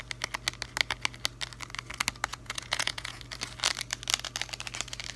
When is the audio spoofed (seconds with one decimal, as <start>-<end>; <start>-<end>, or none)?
2.3-3.2